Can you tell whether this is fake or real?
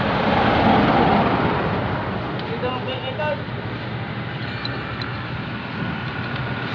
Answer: real